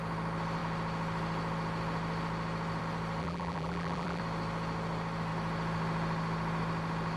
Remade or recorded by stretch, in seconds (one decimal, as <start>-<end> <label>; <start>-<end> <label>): 0.0-3.2 recorded; 3.2-4.2 remade; 4.2-7.2 recorded